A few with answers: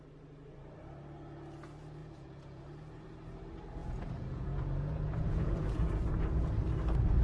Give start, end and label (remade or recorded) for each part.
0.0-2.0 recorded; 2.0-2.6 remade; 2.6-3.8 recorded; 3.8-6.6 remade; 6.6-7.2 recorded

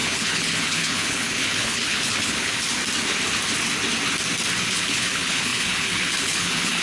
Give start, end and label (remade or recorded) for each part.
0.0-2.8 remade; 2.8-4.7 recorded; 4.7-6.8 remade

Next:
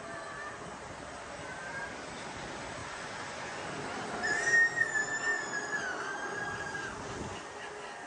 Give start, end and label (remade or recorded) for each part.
0.0-2.8 recorded; 2.8-3.6 remade; 3.6-8.1 recorded